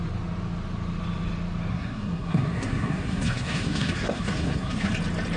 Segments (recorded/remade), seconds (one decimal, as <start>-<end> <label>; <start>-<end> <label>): 0.0-1.7 recorded; 1.7-4.9 remade; 4.9-5.4 recorded